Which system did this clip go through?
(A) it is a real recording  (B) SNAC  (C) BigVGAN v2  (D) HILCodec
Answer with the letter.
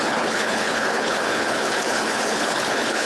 D